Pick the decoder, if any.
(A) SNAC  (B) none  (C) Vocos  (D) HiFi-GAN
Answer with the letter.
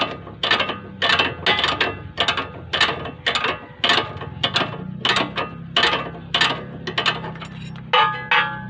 B